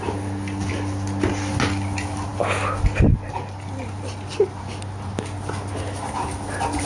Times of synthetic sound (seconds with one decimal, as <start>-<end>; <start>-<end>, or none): none